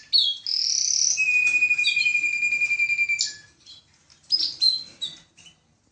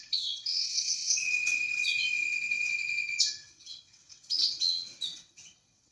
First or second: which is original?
first